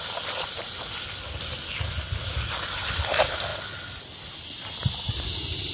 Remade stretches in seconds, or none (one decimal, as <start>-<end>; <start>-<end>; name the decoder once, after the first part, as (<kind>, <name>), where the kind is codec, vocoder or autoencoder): none